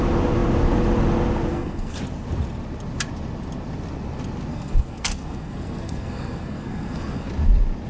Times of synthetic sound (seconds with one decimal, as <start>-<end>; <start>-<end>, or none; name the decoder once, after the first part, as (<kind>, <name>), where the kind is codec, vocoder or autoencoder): 1.5-2.0 (codec, SNAC); 4.5-7.3